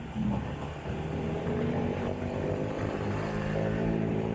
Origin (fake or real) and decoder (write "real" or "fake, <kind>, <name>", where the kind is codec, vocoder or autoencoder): fake, vocoder, BigVGAN v2